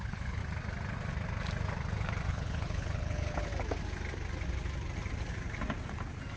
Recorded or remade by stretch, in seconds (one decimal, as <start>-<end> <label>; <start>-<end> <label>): 0.0-0.4 remade; 0.4-2.3 recorded; 2.3-3.5 remade; 3.5-6.4 recorded